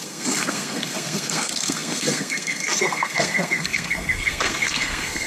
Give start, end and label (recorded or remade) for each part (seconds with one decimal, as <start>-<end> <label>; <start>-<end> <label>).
0.0-5.3 remade